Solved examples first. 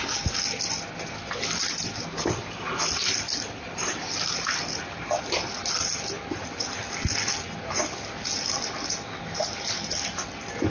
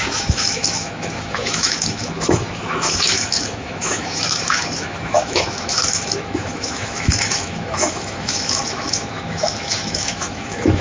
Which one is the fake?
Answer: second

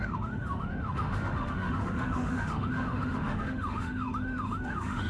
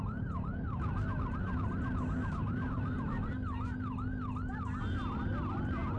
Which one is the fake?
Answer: first